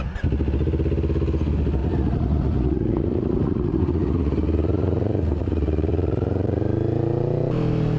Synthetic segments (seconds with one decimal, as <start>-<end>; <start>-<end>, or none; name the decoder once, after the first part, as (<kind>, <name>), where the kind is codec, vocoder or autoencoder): 1.8-6.6 (vocoder, Vocos)